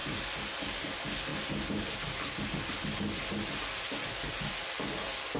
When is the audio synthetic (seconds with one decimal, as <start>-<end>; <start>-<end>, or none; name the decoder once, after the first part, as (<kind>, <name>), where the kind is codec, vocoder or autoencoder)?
none